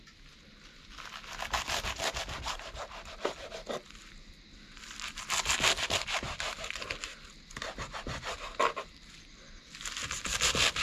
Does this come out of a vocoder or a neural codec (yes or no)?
no